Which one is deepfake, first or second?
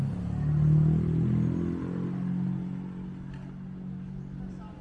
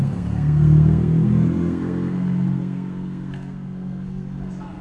second